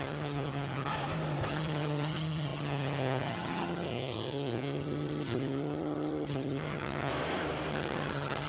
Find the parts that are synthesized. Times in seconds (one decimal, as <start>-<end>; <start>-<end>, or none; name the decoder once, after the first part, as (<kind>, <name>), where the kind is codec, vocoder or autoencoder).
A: 0.0-0.9 (vocoder, HiFi-GAN); 1.5-7.1; 7.7-8.5